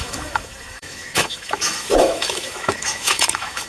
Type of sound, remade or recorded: remade